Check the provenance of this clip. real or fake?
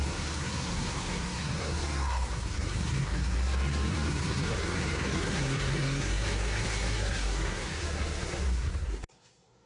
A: fake